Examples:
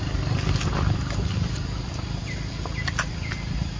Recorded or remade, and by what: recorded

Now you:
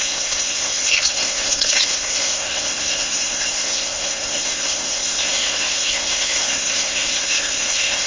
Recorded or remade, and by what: remade, codec, SNAC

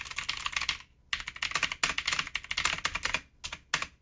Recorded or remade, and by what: recorded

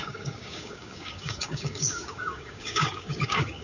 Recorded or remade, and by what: remade, codec, DAC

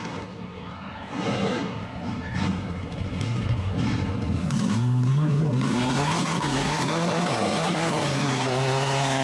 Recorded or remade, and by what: remade, codec, SNAC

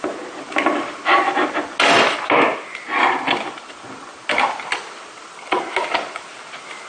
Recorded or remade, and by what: recorded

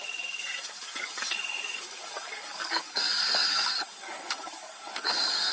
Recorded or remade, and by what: remade, codec, DAC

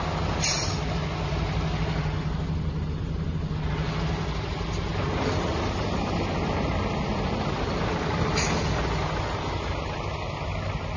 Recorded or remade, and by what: recorded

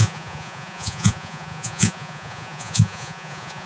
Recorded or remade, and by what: remade, vocoder, Vocos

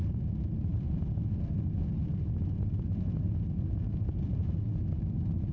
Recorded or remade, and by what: recorded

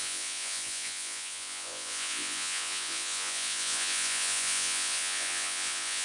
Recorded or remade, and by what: remade, vocoder, Vocos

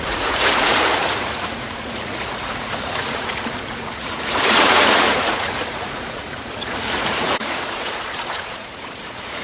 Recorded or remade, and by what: remade, vocoder, Vocos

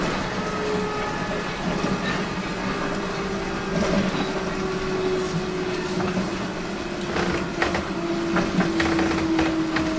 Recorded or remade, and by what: recorded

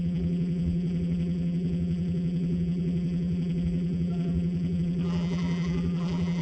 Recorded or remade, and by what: remade, vocoder, BigVGAN v2